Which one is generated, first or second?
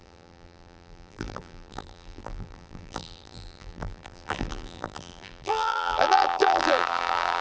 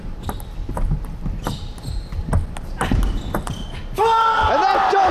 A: first